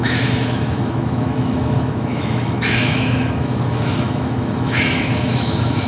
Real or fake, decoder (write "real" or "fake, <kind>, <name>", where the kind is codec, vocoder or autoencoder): fake, autoencoder, DAC-VAE